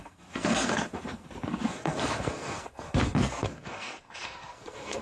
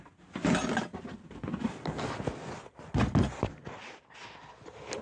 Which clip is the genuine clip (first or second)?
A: second